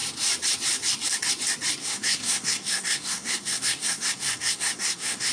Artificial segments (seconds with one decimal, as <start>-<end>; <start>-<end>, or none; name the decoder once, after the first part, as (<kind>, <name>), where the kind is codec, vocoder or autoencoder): 1.8-5.3 (codec, SNAC)